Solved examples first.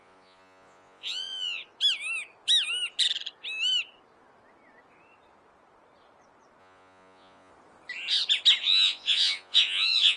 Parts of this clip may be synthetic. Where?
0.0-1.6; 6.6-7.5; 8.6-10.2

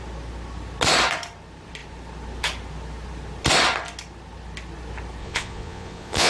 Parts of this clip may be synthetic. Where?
5.2-6.3

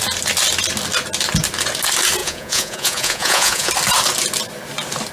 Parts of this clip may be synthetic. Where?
2.2-3.7

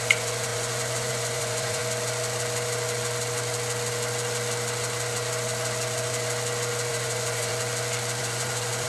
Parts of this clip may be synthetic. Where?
0.0-1.8; 6.9-7.5; 8.2-8.9

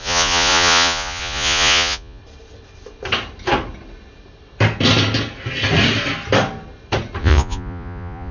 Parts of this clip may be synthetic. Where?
0.0-2.2; 7.2-8.3